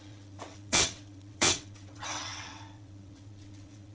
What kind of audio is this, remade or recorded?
remade